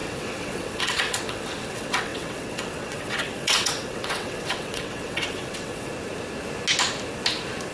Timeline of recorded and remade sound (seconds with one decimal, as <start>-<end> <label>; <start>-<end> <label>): 0.0-5.9 remade; 5.9-7.7 recorded